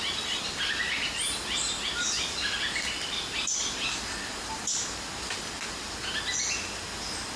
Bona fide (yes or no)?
yes